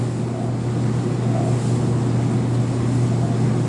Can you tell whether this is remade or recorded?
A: recorded